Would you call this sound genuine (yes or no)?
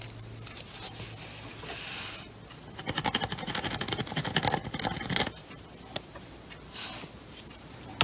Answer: yes